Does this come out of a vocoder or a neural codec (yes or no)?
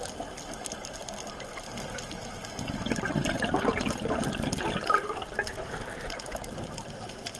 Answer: no